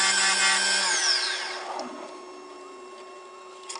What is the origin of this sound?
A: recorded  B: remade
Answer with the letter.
A